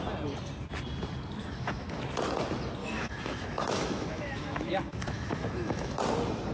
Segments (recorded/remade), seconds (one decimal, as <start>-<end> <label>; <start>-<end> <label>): 0.0-1.4 recorded; 1.4-2.0 remade; 2.0-2.8 recorded; 2.8-6.0 remade; 6.0-6.5 recorded

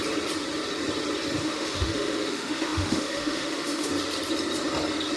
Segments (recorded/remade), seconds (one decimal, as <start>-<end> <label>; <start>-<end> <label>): 0.0-1.4 recorded; 1.4-3.9 remade; 3.9-5.2 recorded

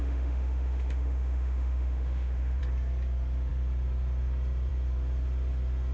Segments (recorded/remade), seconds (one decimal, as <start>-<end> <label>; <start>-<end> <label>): 0.0-2.6 remade; 2.6-5.9 recorded

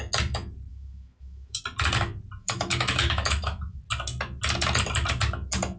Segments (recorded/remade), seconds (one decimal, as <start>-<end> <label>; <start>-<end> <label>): 0.0-0.7 recorded; 0.7-1.6 remade; 1.6-2.4 recorded; 2.4-3.8 remade; 3.8-5.8 recorded

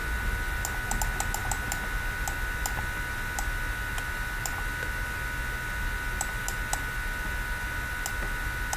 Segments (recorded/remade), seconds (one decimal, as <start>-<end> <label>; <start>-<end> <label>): 0.0-8.8 recorded

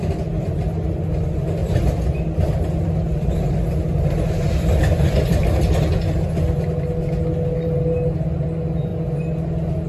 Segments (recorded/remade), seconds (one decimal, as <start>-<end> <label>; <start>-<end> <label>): 0.0-9.9 recorded